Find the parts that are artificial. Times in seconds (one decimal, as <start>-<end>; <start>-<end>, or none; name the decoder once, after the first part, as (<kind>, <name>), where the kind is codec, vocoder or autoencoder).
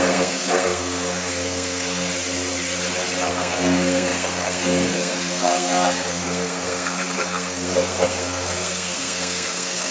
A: 0.0-2.1 (codec, SNAC); 3.3-9.9